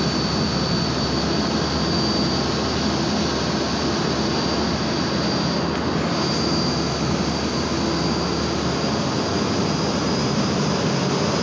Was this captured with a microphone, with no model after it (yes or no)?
yes